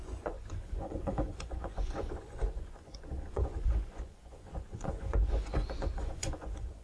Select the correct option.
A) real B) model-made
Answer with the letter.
B